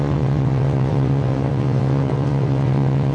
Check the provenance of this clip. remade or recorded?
remade